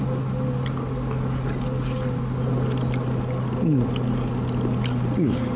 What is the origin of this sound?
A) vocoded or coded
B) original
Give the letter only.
B